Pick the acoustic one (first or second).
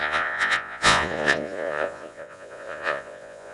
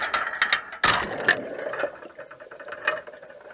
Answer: second